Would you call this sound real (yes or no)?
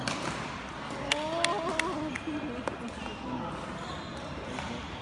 yes